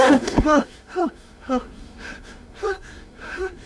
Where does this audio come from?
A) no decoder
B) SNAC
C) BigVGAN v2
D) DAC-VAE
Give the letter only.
B